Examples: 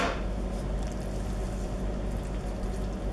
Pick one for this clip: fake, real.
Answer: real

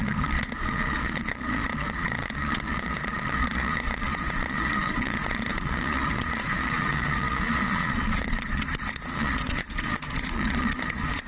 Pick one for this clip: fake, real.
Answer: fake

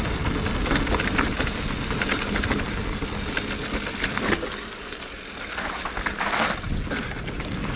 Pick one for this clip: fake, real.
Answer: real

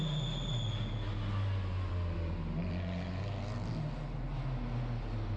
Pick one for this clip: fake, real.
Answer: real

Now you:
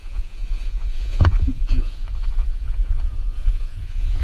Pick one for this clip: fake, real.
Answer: fake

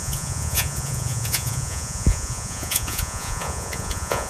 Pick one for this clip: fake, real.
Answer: fake